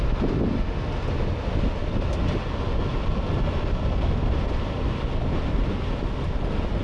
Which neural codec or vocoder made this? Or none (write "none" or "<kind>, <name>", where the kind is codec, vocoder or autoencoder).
none